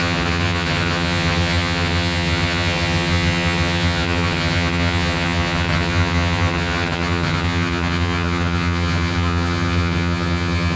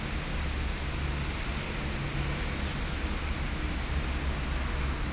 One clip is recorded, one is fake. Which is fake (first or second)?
first